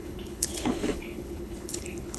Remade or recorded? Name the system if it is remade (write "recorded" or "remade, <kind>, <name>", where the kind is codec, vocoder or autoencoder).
remade, codec, HILCodec